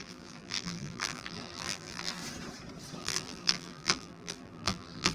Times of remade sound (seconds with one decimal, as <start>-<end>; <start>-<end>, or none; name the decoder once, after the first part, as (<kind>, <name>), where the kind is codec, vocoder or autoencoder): 0.0-2.2 (vocoder, BigVGAN v2); 3.0-5.1